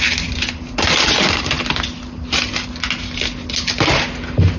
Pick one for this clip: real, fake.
real